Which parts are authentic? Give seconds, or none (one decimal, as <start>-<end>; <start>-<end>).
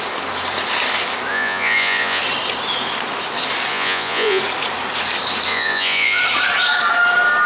0.0-1.3; 2.2-3.7; 4.4-5.5; 6.2-7.5